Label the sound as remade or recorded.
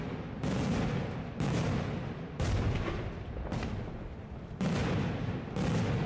recorded